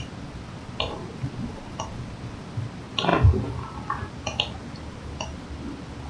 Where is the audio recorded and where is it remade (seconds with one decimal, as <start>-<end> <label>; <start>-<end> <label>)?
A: 0.0-6.1 recorded